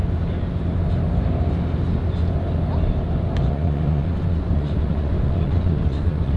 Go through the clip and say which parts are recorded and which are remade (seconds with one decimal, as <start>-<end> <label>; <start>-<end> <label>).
0.0-3.5 recorded; 3.5-6.4 remade